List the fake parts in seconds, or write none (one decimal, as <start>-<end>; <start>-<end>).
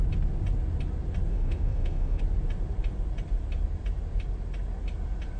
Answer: 1.3-2.2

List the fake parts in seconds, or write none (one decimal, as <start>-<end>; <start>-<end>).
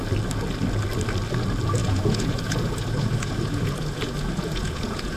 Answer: 1.8-5.2